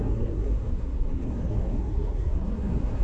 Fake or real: fake